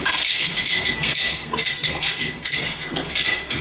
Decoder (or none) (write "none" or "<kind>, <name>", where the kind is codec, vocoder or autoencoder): codec, SNAC